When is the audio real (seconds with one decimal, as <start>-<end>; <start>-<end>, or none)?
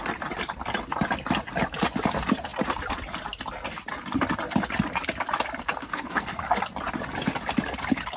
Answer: 0.0-5.8; 6.4-8.2